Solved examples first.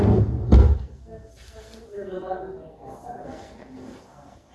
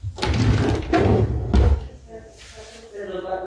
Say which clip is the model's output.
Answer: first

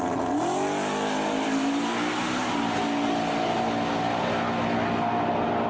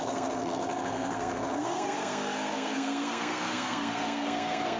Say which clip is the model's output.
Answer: second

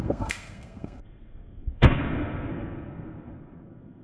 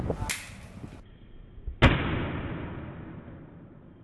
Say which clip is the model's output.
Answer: first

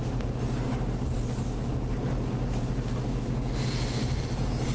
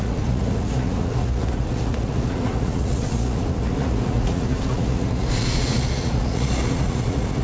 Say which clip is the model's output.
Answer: second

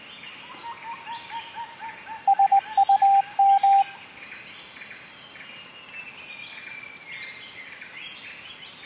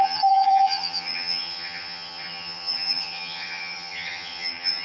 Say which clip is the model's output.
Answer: second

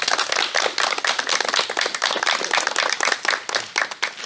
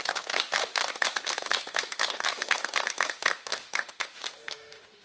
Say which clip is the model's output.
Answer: second